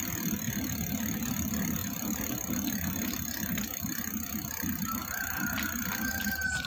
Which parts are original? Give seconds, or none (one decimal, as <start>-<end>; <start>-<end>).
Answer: 0.0-6.7